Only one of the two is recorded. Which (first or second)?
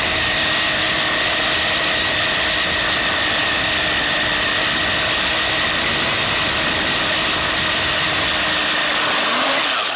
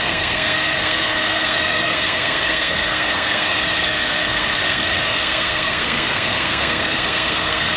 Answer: first